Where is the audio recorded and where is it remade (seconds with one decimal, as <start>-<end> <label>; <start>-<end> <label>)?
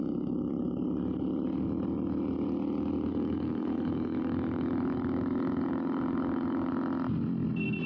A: 0.0-3.1 recorded; 3.1-6.7 remade; 6.7-7.9 recorded